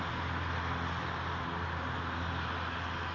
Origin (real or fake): real